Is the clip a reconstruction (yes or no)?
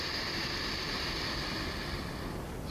yes